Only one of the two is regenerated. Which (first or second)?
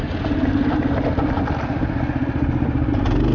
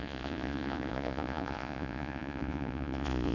second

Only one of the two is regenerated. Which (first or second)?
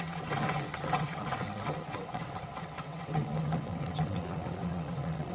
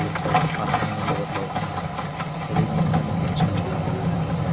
first